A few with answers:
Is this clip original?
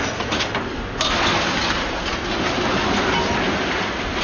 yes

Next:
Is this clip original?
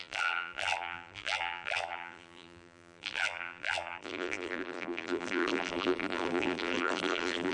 no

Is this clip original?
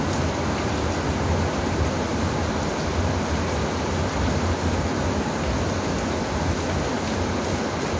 yes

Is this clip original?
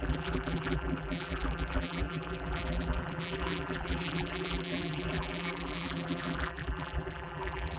no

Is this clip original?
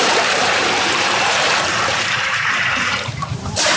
no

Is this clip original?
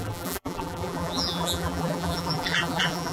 no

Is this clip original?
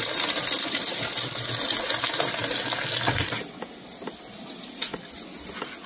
yes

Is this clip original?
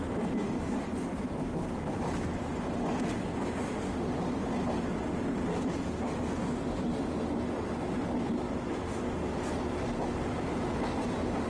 yes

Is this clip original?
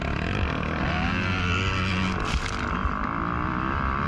yes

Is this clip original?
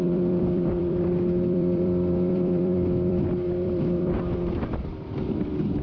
no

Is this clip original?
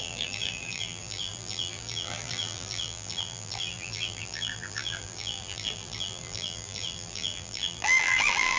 no